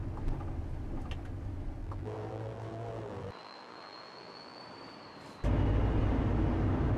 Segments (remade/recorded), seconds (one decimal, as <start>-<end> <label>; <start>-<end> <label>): 0.0-1.8 recorded; 1.8-4.6 remade; 4.6-7.0 recorded